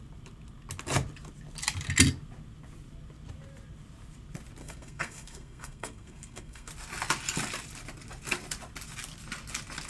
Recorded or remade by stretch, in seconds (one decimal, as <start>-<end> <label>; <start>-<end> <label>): 0.0-4.6 recorded; 4.6-6.7 remade; 6.7-9.9 recorded